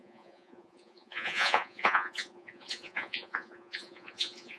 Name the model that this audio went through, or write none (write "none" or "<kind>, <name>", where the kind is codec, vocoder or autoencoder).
vocoder, Vocos